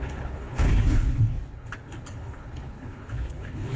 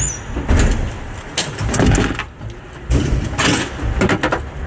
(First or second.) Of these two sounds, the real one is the second